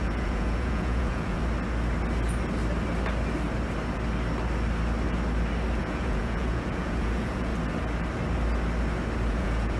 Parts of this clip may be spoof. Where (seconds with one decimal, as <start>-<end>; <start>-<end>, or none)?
0.0-1.4; 5.8-7.5; 9.3-9.8